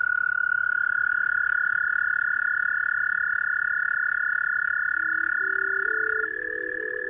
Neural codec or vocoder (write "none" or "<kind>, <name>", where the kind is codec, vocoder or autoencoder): none